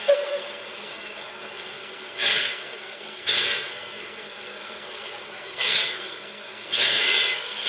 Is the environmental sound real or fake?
fake